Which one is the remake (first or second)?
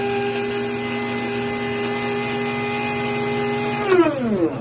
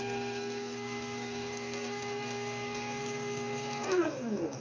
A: second